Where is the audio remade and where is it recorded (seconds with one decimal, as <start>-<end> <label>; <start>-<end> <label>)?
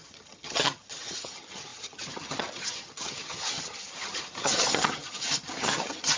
0.0-6.2 remade